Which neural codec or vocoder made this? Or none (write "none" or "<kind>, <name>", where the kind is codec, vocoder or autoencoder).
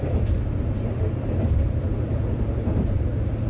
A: vocoder, BigVGAN v2